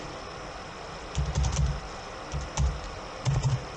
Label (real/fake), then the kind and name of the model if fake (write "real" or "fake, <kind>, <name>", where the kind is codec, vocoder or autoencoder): real